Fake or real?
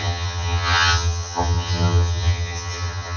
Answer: fake